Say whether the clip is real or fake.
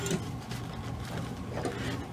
real